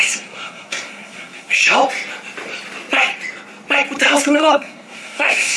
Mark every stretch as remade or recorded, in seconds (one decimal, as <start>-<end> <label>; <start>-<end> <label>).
0.0-1.6 remade; 1.6-4.2 recorded; 4.2-5.6 remade

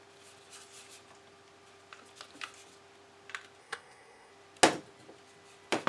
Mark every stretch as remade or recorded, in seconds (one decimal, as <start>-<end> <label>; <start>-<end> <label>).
0.0-3.6 recorded; 3.6-4.3 remade; 4.3-5.9 recorded

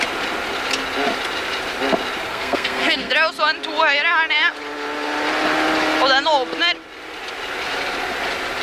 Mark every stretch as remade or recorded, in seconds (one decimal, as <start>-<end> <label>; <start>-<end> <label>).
0.0-2.3 recorded; 2.3-3.1 remade; 3.1-8.6 recorded

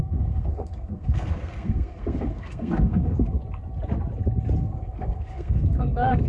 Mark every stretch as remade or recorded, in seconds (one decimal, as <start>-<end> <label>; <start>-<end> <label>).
0.0-3.4 remade; 3.4-4.6 recorded; 4.6-6.3 remade

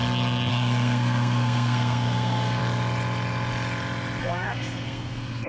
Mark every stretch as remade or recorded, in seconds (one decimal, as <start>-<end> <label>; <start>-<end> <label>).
0.0-0.5 recorded; 0.5-2.6 remade; 2.6-4.2 recorded; 4.2-5.5 remade